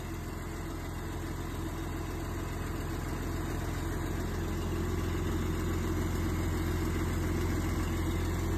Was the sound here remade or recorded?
recorded